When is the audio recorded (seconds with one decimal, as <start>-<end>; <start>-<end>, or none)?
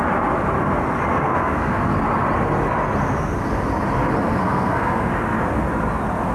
0.0-1.1; 1.9-4.4; 5.1-6.3